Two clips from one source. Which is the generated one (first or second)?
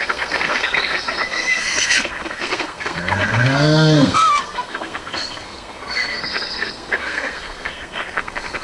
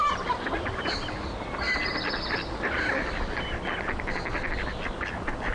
first